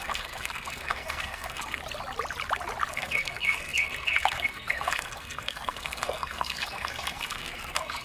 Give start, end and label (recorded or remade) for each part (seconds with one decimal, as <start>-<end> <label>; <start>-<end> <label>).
0.0-1.8 remade; 1.8-2.9 recorded; 2.9-8.0 remade

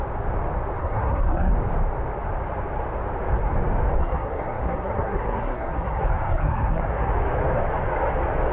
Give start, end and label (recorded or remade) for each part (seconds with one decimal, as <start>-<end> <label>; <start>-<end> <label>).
0.0-0.8 recorded; 0.8-1.5 remade; 1.5-4.0 recorded; 4.0-7.1 remade; 7.1-8.5 recorded

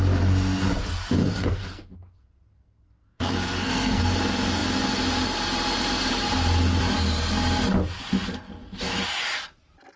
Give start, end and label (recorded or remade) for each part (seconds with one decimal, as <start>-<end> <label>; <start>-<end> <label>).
0.0-1.2 recorded; 1.2-4.0 remade; 4.0-10.0 recorded

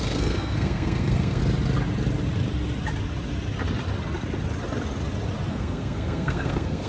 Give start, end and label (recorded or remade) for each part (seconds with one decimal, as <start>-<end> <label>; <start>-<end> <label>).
0.0-1.4 remade; 1.4-5.5 recorded; 5.5-6.9 remade